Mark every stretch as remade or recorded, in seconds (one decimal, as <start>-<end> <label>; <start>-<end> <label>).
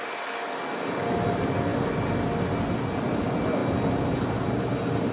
0.0-5.1 recorded